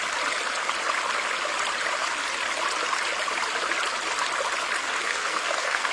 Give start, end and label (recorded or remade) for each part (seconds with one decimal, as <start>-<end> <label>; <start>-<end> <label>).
0.0-4.8 recorded; 4.8-5.9 remade